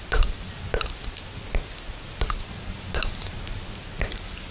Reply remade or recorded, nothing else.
recorded